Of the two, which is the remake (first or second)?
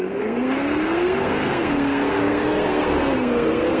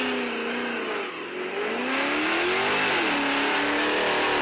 first